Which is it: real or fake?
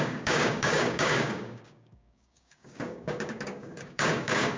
fake